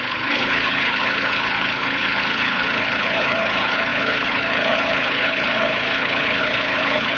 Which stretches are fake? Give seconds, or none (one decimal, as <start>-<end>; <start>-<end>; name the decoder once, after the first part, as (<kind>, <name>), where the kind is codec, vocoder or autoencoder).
0.0-7.2 (codec, HILCodec)